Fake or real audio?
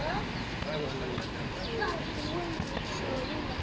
real